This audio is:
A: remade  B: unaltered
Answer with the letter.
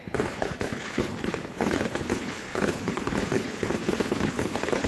A